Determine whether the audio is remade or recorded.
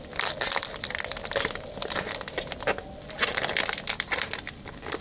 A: recorded